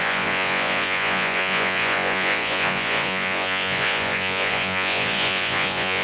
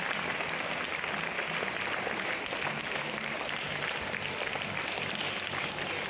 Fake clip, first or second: first